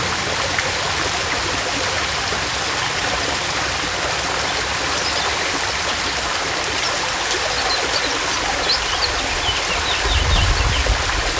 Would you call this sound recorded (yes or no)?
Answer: yes